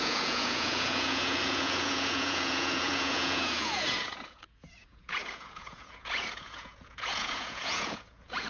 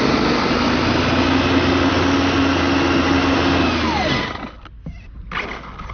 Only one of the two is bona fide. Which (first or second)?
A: second